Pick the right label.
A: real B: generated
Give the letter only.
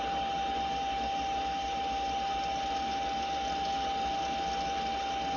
A